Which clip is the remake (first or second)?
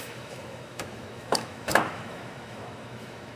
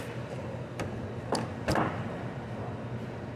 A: first